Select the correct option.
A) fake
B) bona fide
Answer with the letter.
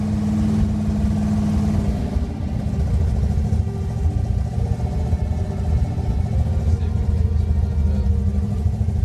B